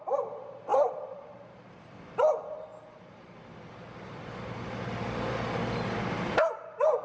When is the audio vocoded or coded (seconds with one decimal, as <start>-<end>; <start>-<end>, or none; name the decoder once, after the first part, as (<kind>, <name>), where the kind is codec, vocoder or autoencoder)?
0.0-2.7 (vocoder, BigVGAN v2); 6.5-7.0